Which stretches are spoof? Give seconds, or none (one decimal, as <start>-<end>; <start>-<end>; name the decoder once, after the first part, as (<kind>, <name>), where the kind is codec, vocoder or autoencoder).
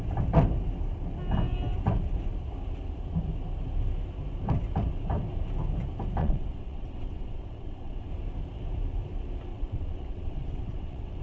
6.2-8.1 (vocoder, WaveNeXt); 9.5-11.2